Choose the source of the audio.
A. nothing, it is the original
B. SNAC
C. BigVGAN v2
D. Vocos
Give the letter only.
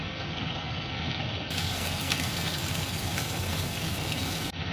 B